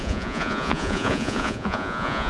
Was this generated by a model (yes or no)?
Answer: yes